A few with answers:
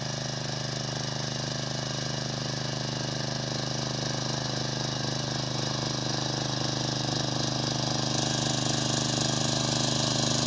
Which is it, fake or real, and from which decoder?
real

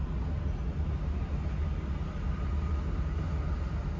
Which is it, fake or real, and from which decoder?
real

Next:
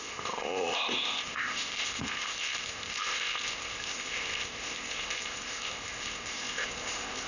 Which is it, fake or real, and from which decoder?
fake, codec, ZipCodec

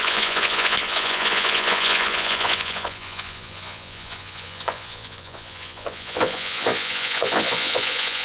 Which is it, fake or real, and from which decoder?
fake, vocoder, Vocos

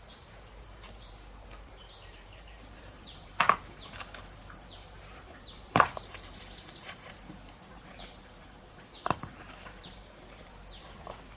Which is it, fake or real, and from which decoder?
fake, vocoder, BigVGAN v2